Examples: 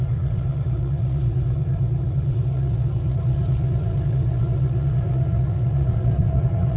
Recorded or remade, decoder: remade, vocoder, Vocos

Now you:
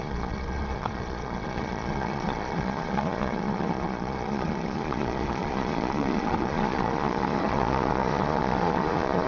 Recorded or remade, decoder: remade, vocoder, Vocos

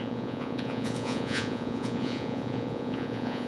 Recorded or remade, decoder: remade, vocoder, Vocos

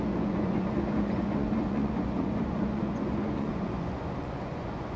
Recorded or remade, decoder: remade, vocoder, Vocos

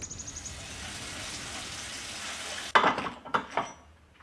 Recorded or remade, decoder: recorded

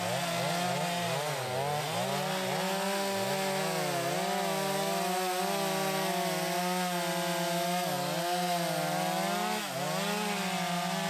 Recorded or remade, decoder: recorded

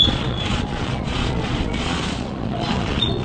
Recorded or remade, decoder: remade, vocoder, Vocos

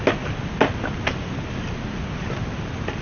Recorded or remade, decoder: recorded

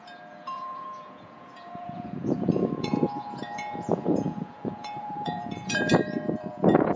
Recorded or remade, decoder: remade, vocoder, Vocos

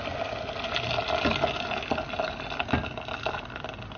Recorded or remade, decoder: recorded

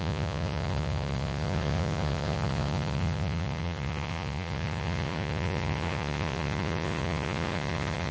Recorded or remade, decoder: remade, vocoder, Vocos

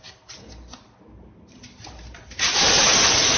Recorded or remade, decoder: recorded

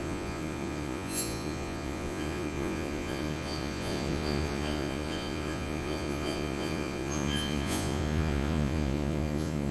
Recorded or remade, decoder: remade, vocoder, Vocos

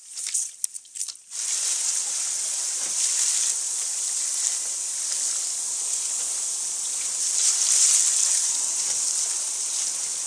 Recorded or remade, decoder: recorded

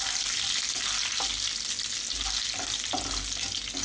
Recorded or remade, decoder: recorded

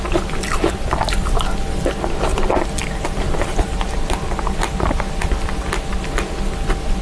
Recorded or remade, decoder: recorded